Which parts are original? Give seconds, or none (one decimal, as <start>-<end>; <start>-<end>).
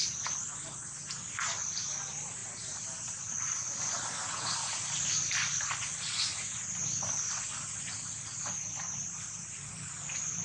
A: 0.0-10.4